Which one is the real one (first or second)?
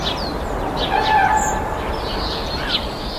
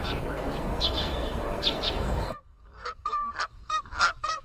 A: first